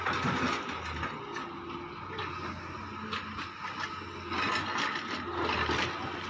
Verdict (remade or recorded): recorded